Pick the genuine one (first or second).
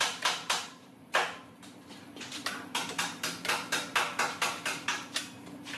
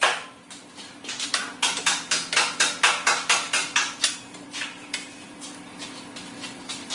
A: second